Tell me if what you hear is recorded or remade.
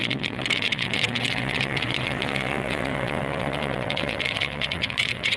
remade